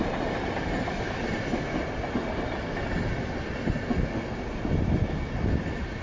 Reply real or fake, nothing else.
real